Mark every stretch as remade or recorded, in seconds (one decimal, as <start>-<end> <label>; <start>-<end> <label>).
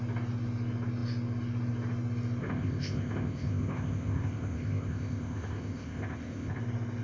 0.0-2.4 recorded; 2.4-6.6 remade; 6.6-7.0 recorded